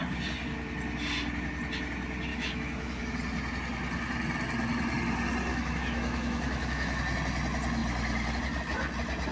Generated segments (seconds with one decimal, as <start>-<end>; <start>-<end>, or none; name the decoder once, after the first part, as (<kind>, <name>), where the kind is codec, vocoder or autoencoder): 2.3-3.0 (autoencoder, DAC-VAE); 5.5-7.0